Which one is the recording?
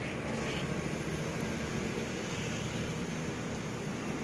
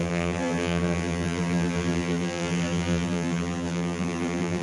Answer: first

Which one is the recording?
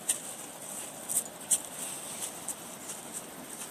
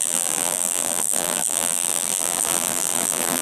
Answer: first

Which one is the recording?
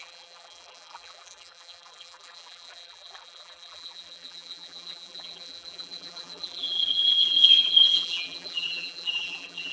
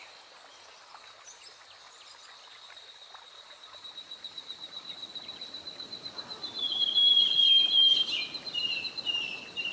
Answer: second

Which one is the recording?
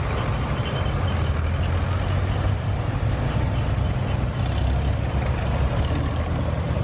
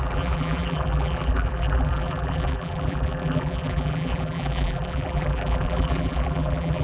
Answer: first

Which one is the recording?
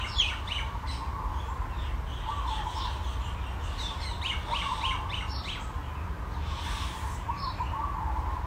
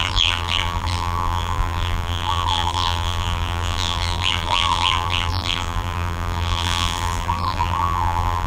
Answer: first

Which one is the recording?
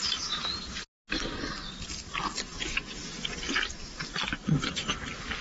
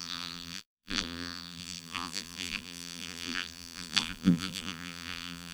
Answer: first